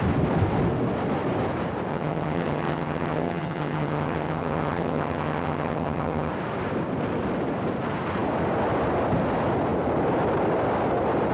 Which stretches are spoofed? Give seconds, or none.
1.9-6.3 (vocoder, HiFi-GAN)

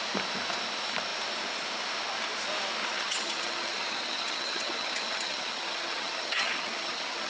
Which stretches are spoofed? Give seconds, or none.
2.8-7.3 (vocoder, HiFi-GAN)

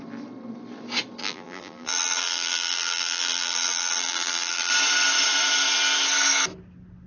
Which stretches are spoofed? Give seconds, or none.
1.2-4.7 (vocoder, BigVGAN v2)

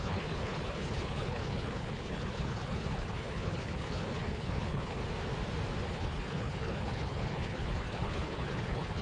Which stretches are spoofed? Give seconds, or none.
0.0-5.0 (codec, HILCodec); 5.9-9.0

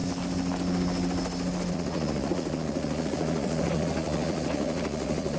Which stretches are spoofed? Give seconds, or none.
1.7-5.4 (vocoder, Vocos)

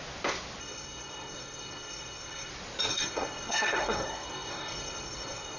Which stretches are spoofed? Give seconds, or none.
0.6-2.5 (codec, SNAC); 2.9-5.6

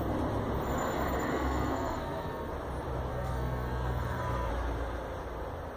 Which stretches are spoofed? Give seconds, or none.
1.3-2.5 (codec, SNAC); 3.1-4.5